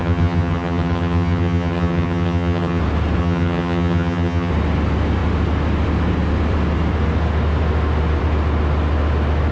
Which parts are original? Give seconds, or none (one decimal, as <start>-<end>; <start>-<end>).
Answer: 2.8-3.2; 4.5-9.5